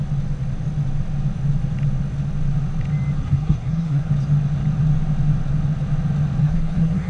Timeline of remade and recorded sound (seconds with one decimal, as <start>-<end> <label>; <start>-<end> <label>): 0.0-3.2 recorded; 3.2-4.1 remade; 4.1-6.4 recorded; 6.4-7.1 remade